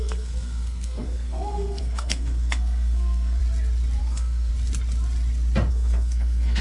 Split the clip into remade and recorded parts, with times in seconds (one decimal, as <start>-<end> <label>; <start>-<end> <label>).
0.0-3.4 remade; 3.4-4.0 recorded; 4.0-4.5 remade; 4.5-5.7 recorded; 5.7-6.6 remade